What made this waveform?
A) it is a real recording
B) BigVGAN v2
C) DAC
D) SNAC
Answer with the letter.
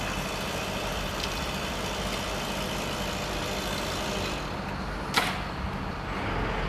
A